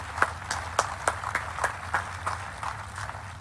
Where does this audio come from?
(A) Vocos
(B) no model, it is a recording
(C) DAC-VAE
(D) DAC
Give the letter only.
B